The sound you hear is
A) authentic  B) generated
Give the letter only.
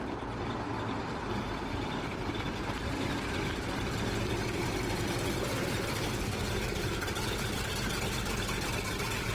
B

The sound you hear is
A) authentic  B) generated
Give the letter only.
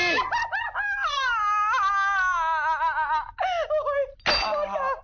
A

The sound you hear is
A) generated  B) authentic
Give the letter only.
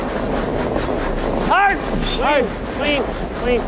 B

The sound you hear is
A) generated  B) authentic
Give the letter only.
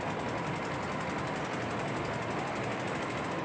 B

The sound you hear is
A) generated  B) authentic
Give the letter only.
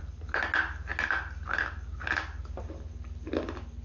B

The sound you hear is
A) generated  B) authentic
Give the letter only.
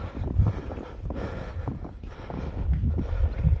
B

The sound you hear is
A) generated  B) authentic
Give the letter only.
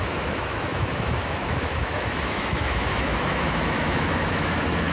A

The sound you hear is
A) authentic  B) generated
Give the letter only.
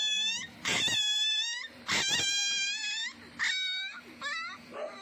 B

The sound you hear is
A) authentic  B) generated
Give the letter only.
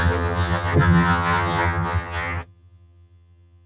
B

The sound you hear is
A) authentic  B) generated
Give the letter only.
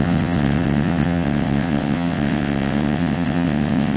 B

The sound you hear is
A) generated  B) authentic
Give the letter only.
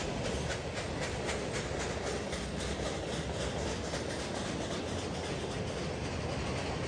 B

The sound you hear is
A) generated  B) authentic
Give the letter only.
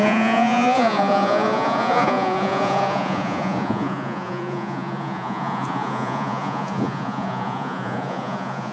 A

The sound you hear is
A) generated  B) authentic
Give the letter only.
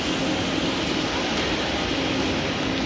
B